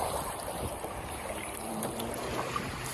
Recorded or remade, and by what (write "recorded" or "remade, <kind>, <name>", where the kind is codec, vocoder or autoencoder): remade, vocoder, BigVGAN v2